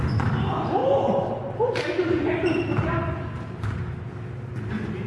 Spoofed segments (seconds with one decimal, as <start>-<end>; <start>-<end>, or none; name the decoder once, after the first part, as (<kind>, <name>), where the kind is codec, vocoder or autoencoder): none